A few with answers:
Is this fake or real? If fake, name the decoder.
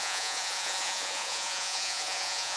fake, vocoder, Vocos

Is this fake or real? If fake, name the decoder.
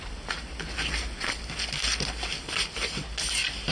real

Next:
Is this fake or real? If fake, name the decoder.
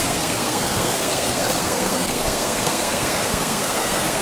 fake, codec, SNAC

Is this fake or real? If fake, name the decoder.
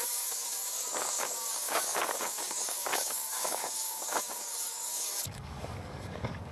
fake, codec, DAC